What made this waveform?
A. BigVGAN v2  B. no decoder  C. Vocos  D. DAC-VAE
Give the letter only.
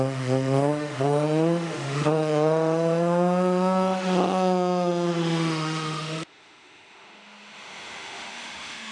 D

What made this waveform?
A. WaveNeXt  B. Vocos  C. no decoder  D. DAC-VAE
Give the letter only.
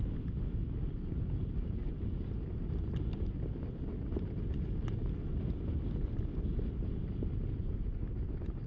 C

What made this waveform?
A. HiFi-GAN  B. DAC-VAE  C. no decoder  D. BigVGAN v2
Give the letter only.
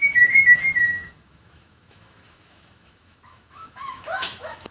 B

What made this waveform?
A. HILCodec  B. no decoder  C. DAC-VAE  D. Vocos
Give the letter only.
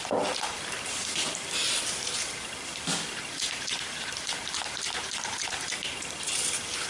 B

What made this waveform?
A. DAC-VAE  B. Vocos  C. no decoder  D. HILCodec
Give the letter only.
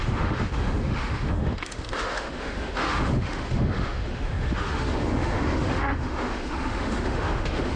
A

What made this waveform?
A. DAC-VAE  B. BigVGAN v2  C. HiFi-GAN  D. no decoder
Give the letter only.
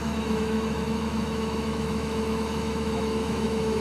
A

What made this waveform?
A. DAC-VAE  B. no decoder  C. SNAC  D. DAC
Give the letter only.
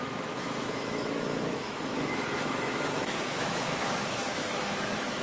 A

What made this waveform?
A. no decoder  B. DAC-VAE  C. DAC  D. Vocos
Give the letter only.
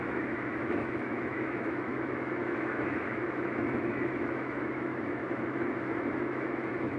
B